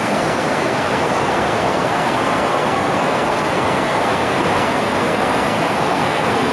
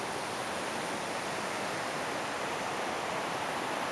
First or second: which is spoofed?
first